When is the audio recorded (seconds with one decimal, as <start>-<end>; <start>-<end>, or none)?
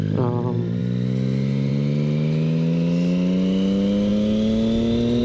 0.0-5.2